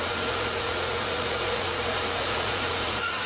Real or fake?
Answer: fake